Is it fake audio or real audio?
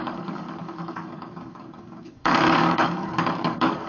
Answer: fake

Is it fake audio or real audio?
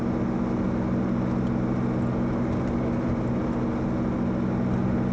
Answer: real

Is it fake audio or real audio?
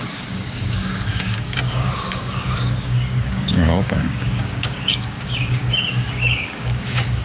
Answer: fake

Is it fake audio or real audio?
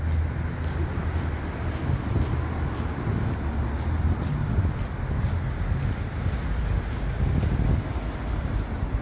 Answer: real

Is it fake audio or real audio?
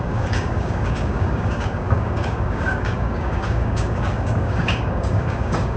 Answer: fake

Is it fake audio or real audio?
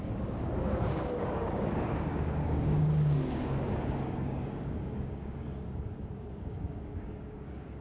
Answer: fake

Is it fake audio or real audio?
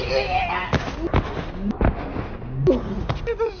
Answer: real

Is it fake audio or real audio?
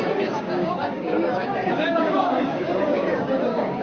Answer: fake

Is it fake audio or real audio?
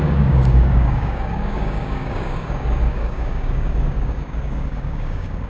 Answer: fake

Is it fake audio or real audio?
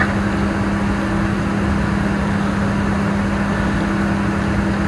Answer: real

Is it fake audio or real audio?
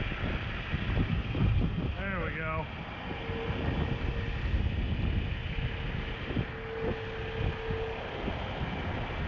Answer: real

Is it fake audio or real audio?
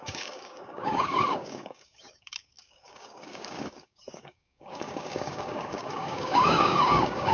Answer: fake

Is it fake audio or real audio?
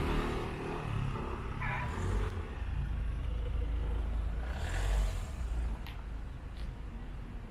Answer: real